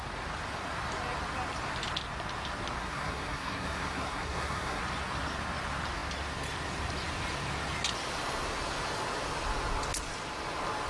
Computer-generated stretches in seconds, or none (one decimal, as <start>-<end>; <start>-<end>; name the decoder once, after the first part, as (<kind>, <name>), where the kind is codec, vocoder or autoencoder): 2.8-4.8 (codec, SNAC)